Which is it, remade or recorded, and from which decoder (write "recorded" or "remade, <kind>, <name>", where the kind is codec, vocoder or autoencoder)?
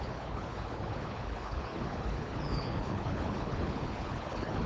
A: remade, codec, HILCodec